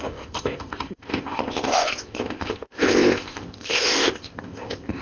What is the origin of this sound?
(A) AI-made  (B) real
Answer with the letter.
A